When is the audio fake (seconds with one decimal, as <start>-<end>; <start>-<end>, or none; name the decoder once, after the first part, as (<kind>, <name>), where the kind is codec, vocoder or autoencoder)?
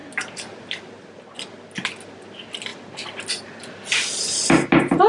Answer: none